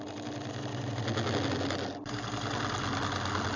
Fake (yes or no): no